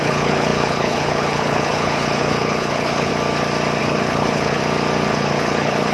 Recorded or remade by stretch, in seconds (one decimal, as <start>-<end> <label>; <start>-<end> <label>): 0.0-3.1 remade; 3.1-3.8 recorded; 3.8-4.6 remade; 4.6-5.1 recorded; 5.1-5.9 remade